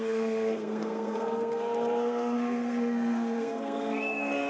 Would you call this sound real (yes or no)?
no